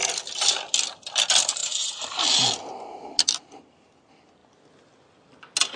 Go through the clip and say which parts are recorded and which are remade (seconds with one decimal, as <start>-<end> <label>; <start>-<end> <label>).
0.0-5.8 recorded